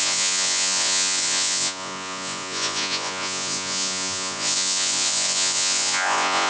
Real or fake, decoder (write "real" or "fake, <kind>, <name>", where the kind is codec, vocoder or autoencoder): fake, vocoder, Vocos